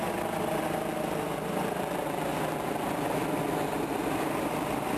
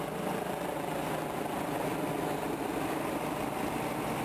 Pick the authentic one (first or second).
first